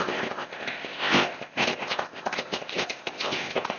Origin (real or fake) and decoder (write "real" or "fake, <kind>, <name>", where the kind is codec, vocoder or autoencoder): fake, codec, ZipCodec